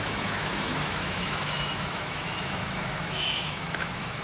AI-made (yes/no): yes